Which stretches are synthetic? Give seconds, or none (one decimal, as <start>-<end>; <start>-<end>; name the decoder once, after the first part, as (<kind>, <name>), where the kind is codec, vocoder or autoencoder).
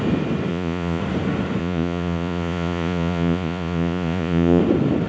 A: 0.5-1.0 (vocoder, Vocos); 1.6-4.6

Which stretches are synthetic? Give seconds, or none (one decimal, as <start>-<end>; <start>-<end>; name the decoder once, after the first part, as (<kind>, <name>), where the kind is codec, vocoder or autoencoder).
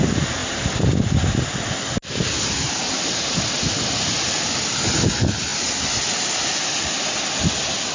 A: none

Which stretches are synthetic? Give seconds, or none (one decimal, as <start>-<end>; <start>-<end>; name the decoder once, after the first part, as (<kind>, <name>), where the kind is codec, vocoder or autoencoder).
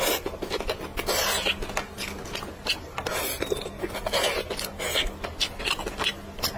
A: none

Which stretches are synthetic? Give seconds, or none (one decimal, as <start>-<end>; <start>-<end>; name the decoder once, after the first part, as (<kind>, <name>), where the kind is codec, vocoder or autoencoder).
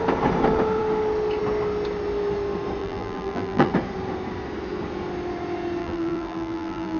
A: 2.8-3.7 (vocoder, BigVGAN v2); 5.8-7.0